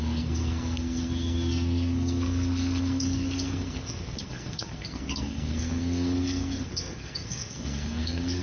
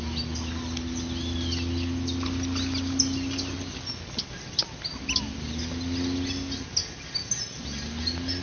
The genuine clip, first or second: second